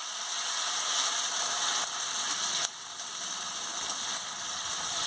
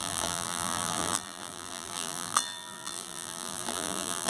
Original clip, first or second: first